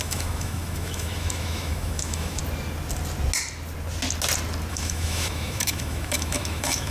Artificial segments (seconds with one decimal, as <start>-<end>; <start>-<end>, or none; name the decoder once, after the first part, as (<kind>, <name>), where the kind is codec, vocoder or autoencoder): 0.0-2.4 (autoencoder, DAC-VAE); 4.7-6.9